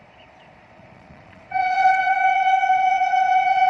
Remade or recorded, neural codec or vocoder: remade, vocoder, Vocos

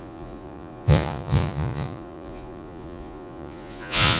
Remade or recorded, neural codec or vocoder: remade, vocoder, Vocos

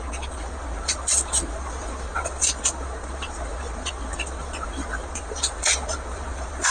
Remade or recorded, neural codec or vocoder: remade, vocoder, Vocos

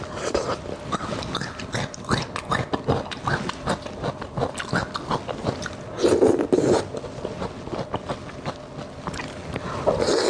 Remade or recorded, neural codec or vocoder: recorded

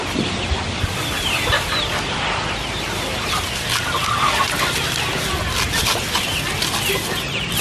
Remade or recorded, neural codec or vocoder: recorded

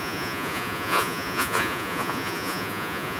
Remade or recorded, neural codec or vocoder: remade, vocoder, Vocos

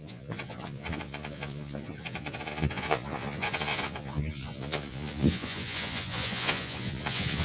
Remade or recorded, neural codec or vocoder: remade, vocoder, Vocos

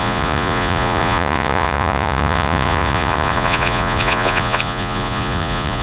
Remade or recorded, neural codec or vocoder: remade, vocoder, Vocos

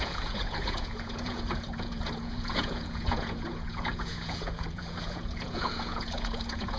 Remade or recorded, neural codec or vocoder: remade, vocoder, Vocos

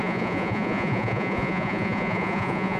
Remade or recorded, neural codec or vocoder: remade, vocoder, Vocos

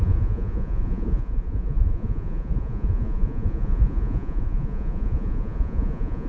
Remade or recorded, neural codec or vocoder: remade, vocoder, Vocos